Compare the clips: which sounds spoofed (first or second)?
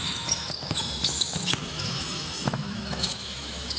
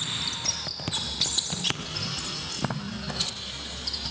first